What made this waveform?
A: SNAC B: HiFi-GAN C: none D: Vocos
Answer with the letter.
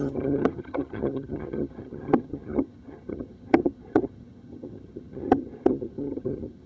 B